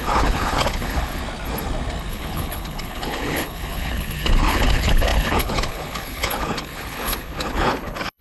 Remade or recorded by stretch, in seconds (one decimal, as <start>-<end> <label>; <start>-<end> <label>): 0.0-1.2 remade; 1.2-2.1 recorded; 2.1-8.2 remade